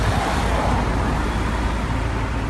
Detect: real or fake real